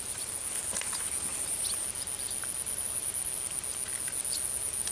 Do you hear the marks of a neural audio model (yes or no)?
no